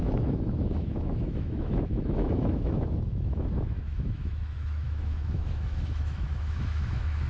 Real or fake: fake